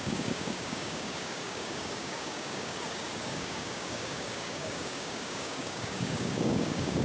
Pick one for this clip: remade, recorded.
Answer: remade